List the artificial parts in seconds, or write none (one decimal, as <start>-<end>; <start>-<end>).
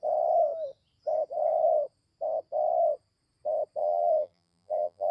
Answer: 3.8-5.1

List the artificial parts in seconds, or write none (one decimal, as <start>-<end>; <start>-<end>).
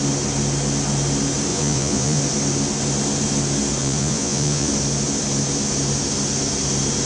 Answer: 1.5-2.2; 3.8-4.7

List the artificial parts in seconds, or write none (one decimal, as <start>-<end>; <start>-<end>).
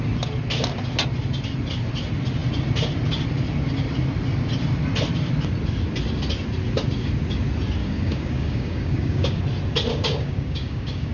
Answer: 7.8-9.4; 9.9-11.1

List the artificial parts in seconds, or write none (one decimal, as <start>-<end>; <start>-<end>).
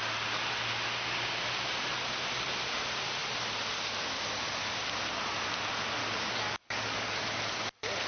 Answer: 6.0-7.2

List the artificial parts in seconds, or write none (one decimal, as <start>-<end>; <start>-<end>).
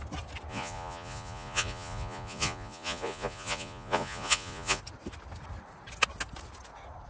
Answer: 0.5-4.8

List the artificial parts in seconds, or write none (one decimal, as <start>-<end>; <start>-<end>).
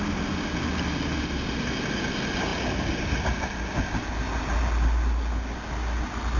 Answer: none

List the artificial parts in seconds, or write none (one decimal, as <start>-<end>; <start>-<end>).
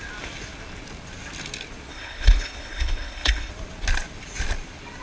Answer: 1.9-3.5